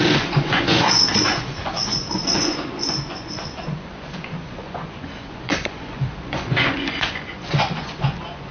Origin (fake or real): fake